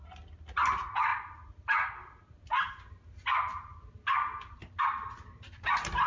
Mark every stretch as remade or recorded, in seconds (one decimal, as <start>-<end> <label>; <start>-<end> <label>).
0.0-6.1 recorded